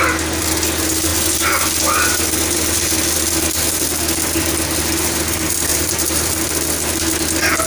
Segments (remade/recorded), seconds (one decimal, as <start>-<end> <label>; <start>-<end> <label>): 0.0-5.7 recorded; 5.7-6.3 remade; 6.3-7.7 recorded